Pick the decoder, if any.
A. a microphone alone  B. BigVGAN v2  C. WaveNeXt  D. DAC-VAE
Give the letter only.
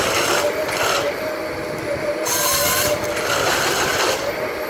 A